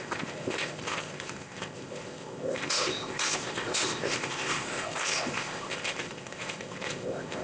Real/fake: fake